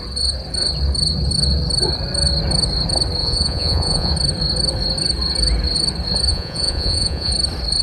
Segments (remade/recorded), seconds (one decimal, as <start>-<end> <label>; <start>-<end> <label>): 0.0-3.2 recorded; 3.2-4.1 remade; 4.1-6.3 recorded; 6.3-7.3 remade; 7.3-7.8 recorded